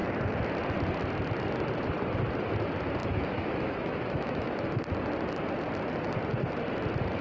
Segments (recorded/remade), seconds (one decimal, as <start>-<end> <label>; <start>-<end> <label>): 0.0-3.0 recorded; 3.0-4.8 remade; 4.8-7.2 recorded